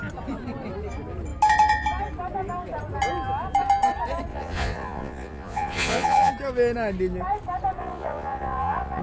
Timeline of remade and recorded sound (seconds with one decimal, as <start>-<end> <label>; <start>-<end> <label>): 0.0-4.3 recorded; 4.3-6.3 remade; 6.3-7.8 recorded; 7.8-9.0 remade